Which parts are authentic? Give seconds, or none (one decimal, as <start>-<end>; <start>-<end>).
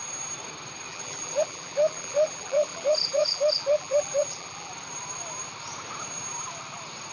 0.0-0.9; 4.7-7.1